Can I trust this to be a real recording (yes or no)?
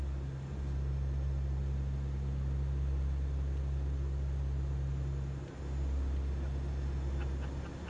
yes